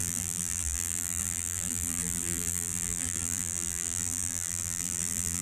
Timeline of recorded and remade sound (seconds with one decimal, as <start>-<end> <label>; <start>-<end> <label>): 0.0-5.4 remade

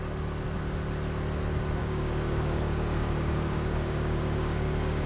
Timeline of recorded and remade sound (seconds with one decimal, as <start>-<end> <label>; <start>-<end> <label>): 0.0-1.8 recorded; 1.8-5.1 remade

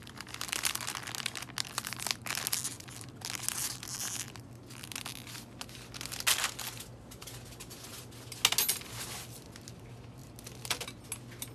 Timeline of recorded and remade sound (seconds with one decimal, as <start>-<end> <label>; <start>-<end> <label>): 0.0-11.5 recorded

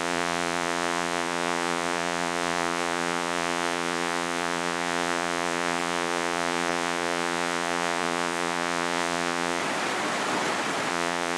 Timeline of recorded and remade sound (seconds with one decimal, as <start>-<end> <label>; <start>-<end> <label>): 0.0-9.6 remade; 9.6-10.9 recorded; 10.9-11.4 remade

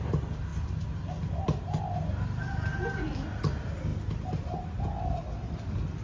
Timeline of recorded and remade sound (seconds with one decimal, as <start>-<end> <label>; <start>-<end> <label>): 0.0-6.0 recorded

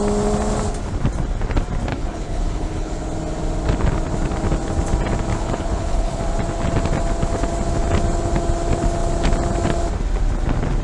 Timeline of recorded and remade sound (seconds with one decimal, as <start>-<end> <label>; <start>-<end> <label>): 0.0-1.9 recorded; 1.9-3.0 remade; 3.0-5.3 recorded; 5.3-6.2 remade; 6.2-10.8 recorded

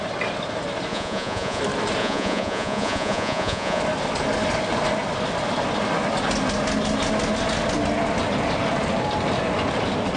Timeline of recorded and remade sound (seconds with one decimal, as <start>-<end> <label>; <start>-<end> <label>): 0.0-0.9 recorded; 0.9-1.6 remade; 1.6-2.0 recorded; 2.0-3.8 remade; 3.8-10.2 recorded